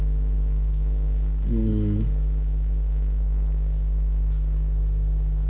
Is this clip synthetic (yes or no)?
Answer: yes